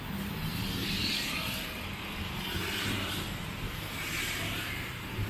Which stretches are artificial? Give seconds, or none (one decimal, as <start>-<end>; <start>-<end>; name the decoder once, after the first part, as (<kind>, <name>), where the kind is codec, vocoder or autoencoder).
0.5-1.1 (vocoder, BigVGAN v2); 2.6-5.3